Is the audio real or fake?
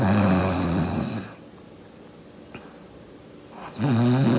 real